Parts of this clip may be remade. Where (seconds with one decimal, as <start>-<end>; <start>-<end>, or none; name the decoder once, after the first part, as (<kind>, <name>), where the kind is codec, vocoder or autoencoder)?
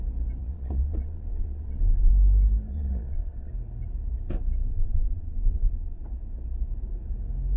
0.4-2.1 (vocoder, Vocos); 2.7-3.5; 4.7-6.0